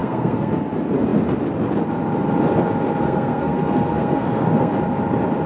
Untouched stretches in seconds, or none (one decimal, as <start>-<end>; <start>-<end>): 0.5-3.0; 4.7-5.5